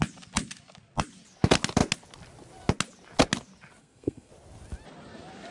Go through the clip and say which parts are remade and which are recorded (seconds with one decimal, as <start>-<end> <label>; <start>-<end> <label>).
0.0-3.8 recorded; 3.8-4.3 remade; 4.3-5.5 recorded